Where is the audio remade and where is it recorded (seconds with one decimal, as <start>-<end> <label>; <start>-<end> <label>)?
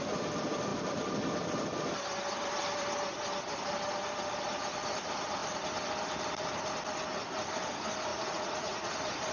0.0-8.1 recorded; 8.1-8.9 remade; 8.9-9.3 recorded